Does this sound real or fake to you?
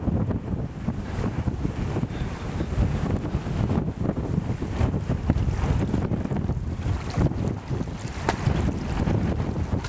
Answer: real